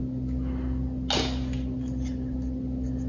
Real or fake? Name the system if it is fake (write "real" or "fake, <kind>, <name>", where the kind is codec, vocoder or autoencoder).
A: real